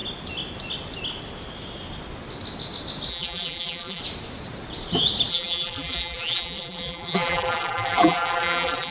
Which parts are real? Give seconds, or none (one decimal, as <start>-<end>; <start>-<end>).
0.0-3.1; 4.0-5.3